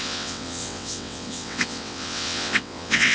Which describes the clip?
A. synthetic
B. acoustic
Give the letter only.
A